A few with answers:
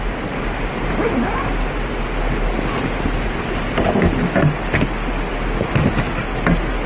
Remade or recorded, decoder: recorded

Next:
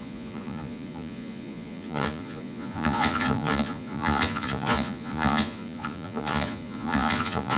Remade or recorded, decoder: remade, vocoder, Vocos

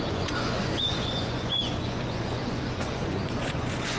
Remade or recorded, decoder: remade, vocoder, Vocos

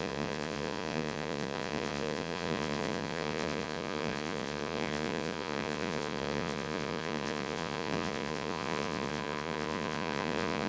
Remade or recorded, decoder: remade, vocoder, Vocos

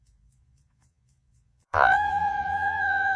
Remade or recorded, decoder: remade, vocoder, Vocos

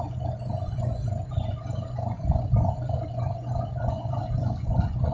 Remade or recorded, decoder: remade, vocoder, Vocos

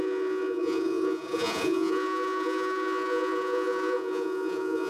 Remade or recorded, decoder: remade, vocoder, Vocos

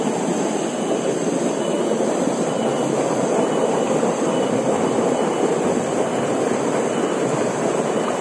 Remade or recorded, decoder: recorded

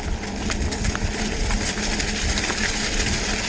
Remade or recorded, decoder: recorded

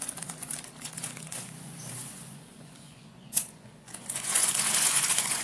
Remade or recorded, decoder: remade, vocoder, Vocos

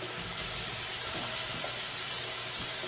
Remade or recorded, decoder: recorded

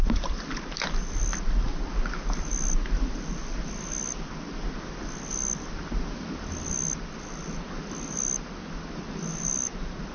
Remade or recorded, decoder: recorded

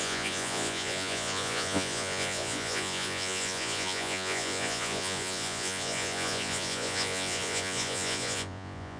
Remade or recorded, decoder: remade, vocoder, Vocos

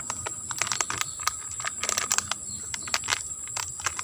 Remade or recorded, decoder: recorded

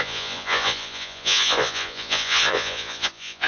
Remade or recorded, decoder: remade, vocoder, Vocos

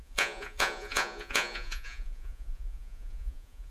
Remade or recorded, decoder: remade, vocoder, Vocos